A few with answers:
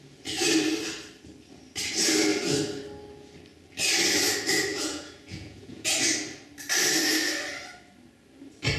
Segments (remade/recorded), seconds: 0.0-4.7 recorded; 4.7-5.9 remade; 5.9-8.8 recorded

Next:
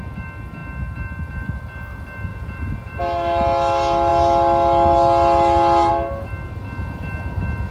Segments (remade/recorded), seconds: 0.0-2.3 recorded; 2.3-3.0 remade; 3.0-7.7 recorded

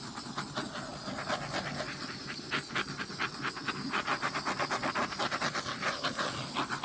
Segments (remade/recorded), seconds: 0.0-6.8 recorded

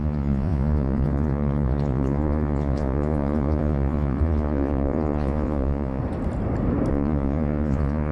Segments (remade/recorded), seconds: 0.0-6.0 remade; 6.0-6.9 recorded; 6.9-8.1 remade

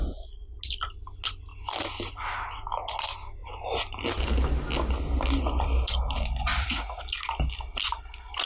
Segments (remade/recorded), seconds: 0.0-6.5 recorded; 6.5-7.0 remade; 7.0-8.5 recorded

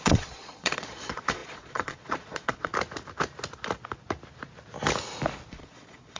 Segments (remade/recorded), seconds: 0.0-2.7 remade; 2.7-5.5 recorded; 5.5-6.2 remade